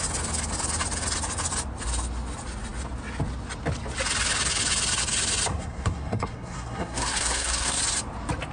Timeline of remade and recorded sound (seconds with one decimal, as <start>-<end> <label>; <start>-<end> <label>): 0.0-5.5 recorded; 5.5-7.8 remade; 7.8-8.5 recorded